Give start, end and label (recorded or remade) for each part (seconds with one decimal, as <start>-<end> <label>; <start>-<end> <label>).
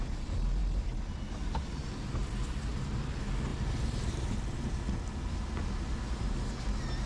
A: 0.0-3.5 recorded; 3.5-4.8 remade; 4.8-7.1 recorded